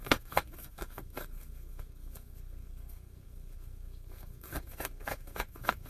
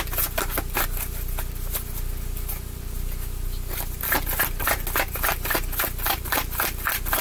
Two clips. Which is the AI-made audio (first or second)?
first